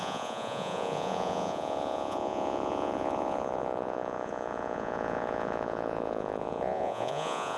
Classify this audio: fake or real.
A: fake